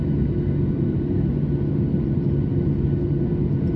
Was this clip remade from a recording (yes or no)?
no